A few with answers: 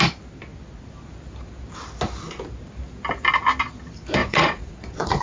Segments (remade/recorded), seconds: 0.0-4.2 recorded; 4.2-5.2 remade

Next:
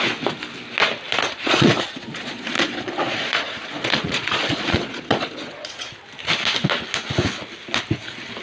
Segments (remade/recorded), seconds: 0.0-1.1 recorded; 1.1-5.9 remade; 5.9-8.4 recorded

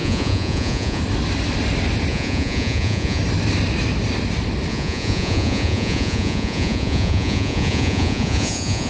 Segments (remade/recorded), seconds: 0.0-1.0 remade; 1.0-2.1 recorded; 2.1-3.2 remade; 3.2-4.7 recorded; 4.7-8.9 remade

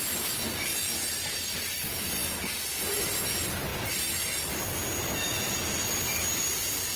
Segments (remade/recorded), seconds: 0.0-7.0 recorded

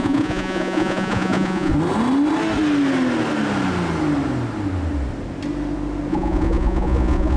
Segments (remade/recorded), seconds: 0.0-1.7 remade; 1.7-6.1 recorded; 6.1-7.4 remade

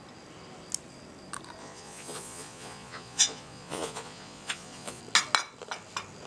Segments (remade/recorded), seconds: 0.0-1.6 recorded; 1.6-5.0 remade; 5.0-6.3 recorded

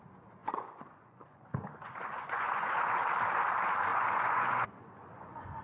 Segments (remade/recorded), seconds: 0.0-0.4 recorded; 0.4-3.0 remade; 3.0-3.9 recorded; 3.9-5.6 remade